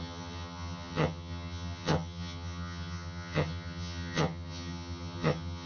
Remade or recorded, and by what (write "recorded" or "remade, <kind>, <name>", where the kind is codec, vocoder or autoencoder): remade, vocoder, HiFi-GAN